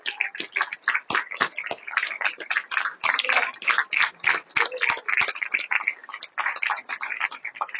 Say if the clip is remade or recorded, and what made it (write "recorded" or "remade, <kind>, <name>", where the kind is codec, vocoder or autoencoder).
recorded